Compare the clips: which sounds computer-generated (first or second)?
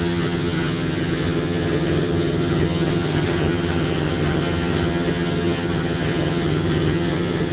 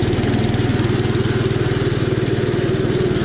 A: first